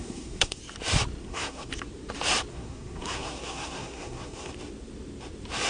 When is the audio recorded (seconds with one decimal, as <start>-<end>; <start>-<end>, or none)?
0.6-1.2; 1.7-2.5; 4.5-5.7